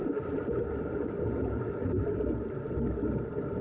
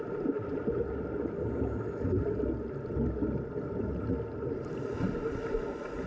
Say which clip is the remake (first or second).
first